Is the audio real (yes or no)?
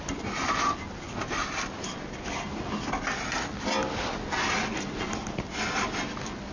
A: yes